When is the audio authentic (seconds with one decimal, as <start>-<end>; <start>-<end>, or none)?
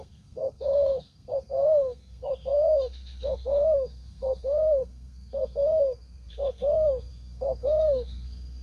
none